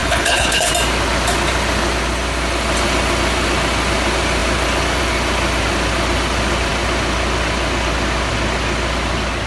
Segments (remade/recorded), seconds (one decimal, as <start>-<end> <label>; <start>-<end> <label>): 0.0-0.7 remade; 0.7-9.5 recorded